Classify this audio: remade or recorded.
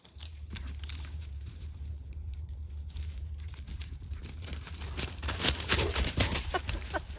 remade